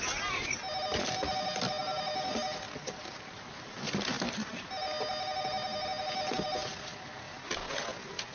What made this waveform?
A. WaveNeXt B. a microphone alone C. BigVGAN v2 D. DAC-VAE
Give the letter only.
B